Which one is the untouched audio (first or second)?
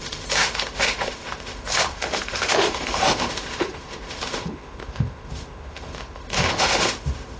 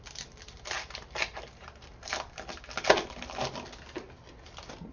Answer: second